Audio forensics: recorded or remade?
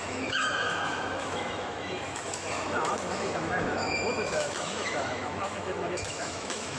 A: remade